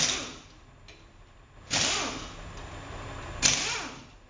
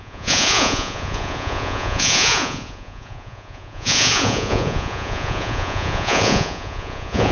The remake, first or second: second